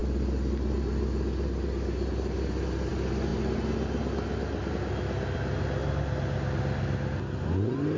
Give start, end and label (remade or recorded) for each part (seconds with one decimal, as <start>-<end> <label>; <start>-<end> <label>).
0.0-8.0 recorded